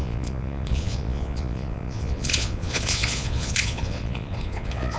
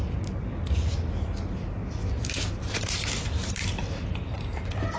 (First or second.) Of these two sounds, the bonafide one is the second